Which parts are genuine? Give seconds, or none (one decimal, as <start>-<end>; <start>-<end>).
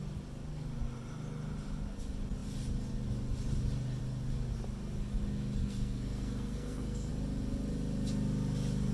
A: 0.0-5.6; 7.1-8.9